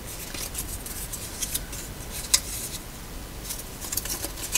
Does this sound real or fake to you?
real